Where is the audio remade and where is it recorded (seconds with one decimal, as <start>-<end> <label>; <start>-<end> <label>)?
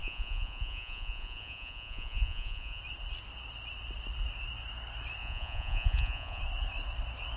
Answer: 0.0-2.8 remade; 2.8-5.2 recorded; 5.2-6.4 remade; 6.4-7.4 recorded